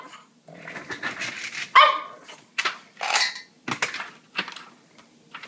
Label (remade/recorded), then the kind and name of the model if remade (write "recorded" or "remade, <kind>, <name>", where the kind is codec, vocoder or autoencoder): recorded